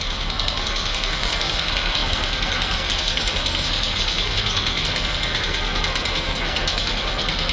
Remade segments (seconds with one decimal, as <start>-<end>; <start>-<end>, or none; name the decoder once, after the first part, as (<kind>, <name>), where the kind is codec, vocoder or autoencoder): 0.0-7.5 (codec, SNAC)